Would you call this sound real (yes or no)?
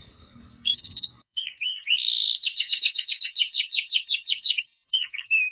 no